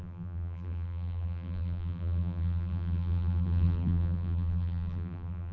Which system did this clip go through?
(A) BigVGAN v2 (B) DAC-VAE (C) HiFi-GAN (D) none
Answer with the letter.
A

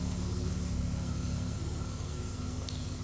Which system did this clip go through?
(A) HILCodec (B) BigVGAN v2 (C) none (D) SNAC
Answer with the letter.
D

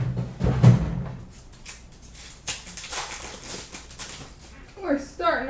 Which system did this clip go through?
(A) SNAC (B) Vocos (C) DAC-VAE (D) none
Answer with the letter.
D